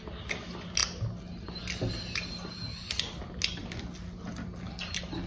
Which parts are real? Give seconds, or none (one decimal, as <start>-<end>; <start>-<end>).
0.0-5.3